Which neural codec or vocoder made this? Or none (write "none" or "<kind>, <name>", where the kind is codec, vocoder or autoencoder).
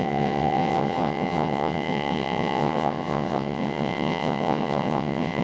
vocoder, WaveNeXt